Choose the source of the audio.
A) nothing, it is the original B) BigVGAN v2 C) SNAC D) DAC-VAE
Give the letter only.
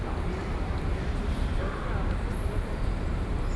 B